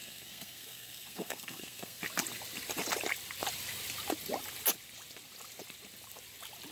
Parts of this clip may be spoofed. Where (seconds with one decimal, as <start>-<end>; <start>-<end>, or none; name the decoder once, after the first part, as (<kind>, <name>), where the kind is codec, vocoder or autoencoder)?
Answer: 0.0-2.0 (codec, SNAC)